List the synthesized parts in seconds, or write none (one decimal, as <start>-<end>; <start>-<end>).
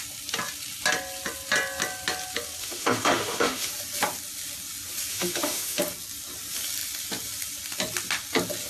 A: 2.6-3.7; 5.1-5.8